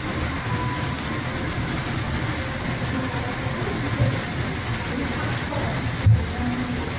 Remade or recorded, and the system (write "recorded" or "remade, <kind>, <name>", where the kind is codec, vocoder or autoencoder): recorded